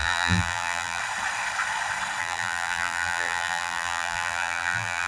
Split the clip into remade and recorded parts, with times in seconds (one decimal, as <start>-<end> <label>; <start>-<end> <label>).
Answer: 0.0-1.0 remade; 1.0-2.2 recorded; 2.2-5.1 remade